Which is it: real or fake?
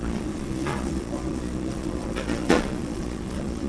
fake